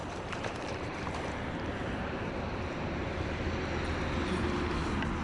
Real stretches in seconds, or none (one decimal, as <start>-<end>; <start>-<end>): 3.1-5.2